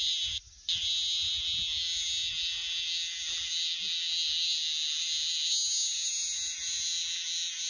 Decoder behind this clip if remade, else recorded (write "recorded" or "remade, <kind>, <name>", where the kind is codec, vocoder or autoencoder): recorded